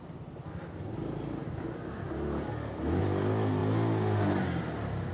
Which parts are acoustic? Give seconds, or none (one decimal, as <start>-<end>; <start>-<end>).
0.0-5.1

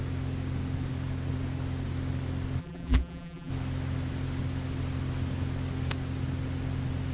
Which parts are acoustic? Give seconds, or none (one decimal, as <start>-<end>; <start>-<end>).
0.0-2.6; 3.5-7.1